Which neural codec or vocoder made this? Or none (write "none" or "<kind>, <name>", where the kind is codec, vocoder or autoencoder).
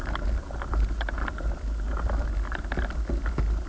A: none